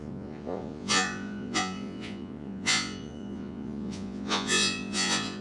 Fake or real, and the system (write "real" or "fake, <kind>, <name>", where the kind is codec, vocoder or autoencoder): fake, vocoder, Vocos